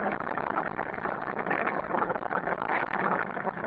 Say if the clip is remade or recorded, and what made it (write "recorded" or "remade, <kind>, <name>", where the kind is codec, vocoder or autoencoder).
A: remade, codec, HILCodec